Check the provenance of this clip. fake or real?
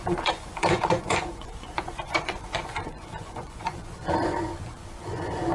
fake